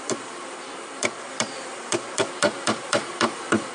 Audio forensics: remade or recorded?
remade